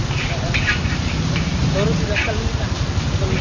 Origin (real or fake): real